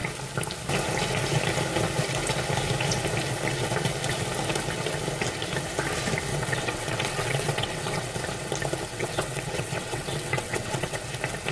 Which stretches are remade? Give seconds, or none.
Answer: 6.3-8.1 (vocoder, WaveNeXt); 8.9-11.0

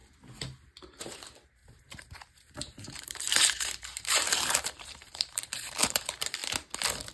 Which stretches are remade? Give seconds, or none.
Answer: 0.8-6.4 (vocoder, BigVGAN v2)

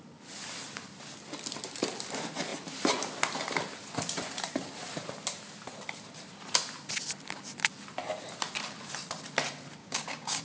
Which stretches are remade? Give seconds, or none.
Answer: 9.8-10.4 (codec, DAC)

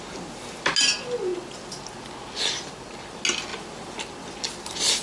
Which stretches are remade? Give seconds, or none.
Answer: none

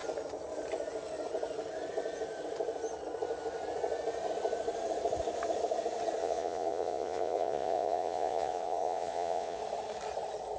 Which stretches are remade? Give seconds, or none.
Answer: 6.2-9.6 (vocoder, Vocos)

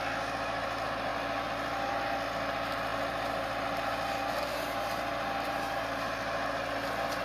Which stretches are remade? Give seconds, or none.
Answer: none

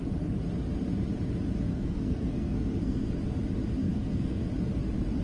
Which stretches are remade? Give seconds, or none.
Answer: 1.7-3.1 (codec, SNAC); 3.8-4.4

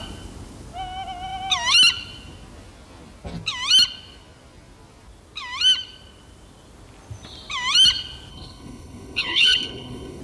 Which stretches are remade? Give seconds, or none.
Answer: 8.3-10.2 (codec, HILCodec)